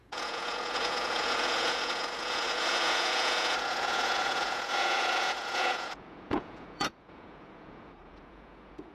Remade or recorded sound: remade